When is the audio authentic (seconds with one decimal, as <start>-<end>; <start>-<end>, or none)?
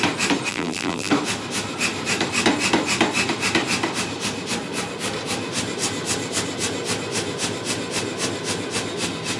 0.0-0.5; 1.1-9.4